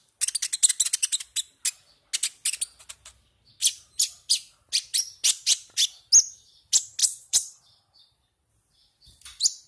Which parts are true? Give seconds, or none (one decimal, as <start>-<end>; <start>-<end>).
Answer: 0.0-7.0; 7.6-9.7